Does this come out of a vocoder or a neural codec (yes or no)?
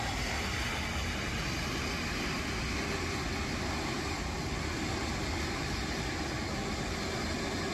no